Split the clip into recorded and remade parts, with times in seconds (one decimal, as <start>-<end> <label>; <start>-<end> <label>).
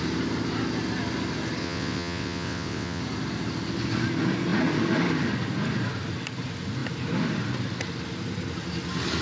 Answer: 0.0-1.6 recorded; 1.6-3.0 remade; 3.0-9.2 recorded